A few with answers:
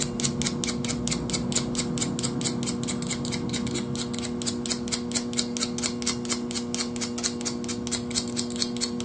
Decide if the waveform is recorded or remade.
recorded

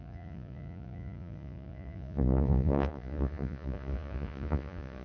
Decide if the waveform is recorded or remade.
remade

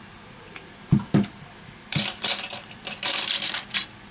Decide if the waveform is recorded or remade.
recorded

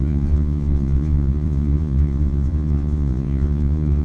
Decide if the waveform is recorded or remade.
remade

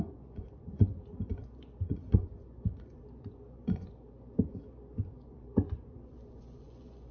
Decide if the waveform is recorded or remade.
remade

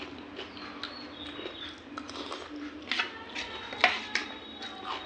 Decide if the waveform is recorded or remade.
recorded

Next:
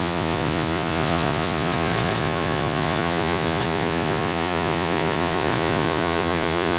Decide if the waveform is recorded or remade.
remade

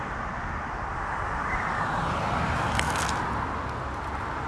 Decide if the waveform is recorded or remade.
recorded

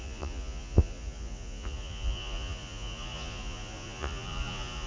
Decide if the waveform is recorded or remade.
remade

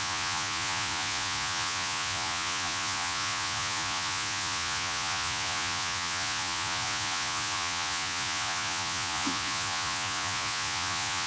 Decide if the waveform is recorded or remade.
remade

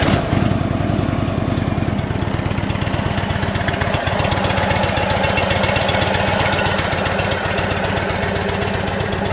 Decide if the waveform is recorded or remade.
recorded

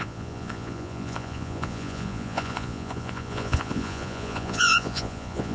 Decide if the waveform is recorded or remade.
remade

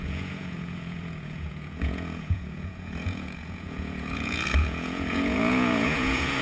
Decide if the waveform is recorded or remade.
remade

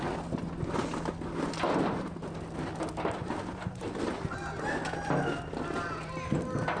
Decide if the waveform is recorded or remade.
recorded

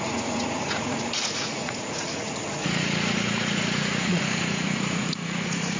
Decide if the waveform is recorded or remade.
remade